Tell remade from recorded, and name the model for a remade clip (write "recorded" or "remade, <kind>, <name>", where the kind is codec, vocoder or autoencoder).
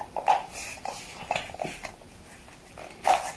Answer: recorded